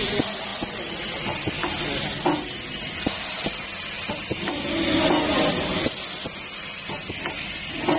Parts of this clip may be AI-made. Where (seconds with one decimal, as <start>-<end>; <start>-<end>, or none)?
none